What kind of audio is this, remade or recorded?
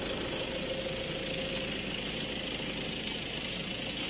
recorded